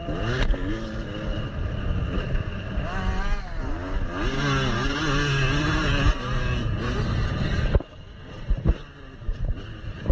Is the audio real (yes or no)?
yes